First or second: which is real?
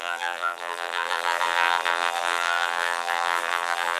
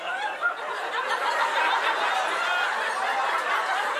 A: second